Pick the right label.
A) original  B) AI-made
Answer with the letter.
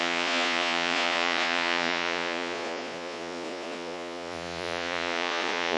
B